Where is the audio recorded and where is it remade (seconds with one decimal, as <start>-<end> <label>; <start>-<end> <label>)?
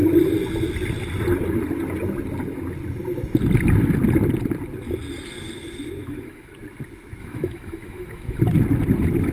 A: 0.0-6.0 recorded; 6.0-6.5 remade; 6.5-7.2 recorded; 7.2-8.4 remade; 8.4-9.3 recorded